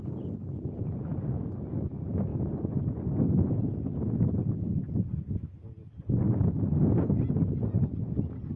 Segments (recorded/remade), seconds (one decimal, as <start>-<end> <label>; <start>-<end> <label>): 0.0-8.6 recorded